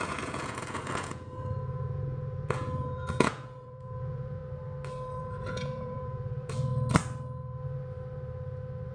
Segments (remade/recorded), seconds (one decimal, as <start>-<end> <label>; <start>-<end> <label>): 0.0-4.4 remade; 4.4-5.2 recorded; 5.2-6.7 remade; 6.7-8.9 recorded